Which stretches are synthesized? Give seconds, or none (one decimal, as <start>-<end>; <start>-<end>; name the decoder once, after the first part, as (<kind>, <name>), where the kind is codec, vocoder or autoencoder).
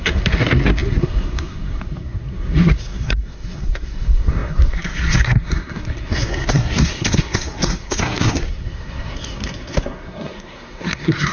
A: 0.0-11.3 (codec, SNAC)